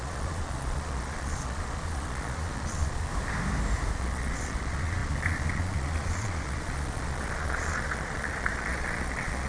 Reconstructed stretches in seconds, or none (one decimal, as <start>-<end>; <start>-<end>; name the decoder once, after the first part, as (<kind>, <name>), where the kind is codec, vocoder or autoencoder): 0.0-3.1 (vocoder, Vocos); 3.9-9.5